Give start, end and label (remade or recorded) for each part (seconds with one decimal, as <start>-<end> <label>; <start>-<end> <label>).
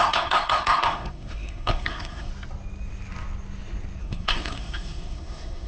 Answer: 0.0-2.3 remade; 2.3-4.0 recorded; 4.0-5.7 remade